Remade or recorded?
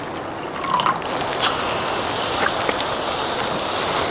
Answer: recorded